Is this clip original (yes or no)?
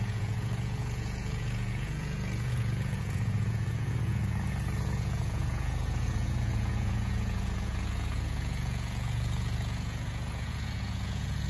no